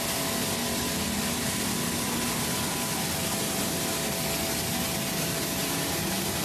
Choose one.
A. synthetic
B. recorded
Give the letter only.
B